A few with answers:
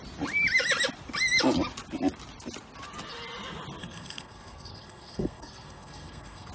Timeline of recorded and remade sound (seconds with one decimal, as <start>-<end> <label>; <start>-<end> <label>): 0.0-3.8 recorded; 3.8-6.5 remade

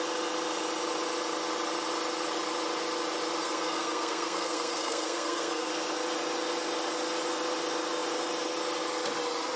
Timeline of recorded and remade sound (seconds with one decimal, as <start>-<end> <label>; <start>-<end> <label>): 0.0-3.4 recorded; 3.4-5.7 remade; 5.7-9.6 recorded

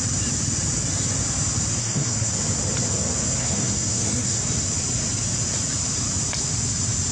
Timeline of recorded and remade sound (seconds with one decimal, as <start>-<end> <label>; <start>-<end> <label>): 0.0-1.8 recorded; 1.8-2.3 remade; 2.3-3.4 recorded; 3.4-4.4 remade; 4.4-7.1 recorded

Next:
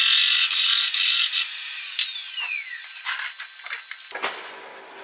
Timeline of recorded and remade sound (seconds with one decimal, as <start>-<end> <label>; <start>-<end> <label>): 0.0-5.0 recorded

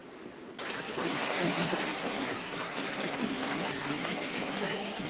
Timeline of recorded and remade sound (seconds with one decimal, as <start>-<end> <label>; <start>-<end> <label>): 0.0-0.7 recorded; 0.7-5.1 remade